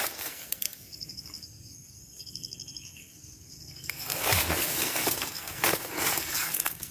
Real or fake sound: fake